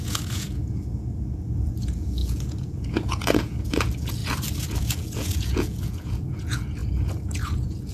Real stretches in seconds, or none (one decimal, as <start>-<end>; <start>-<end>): 4.2-4.8